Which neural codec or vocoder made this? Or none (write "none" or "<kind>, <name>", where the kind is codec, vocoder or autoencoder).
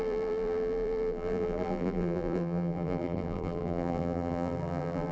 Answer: vocoder, BigVGAN v2